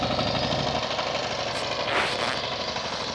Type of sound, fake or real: real